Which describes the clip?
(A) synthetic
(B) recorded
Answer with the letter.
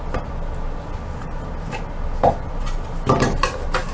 B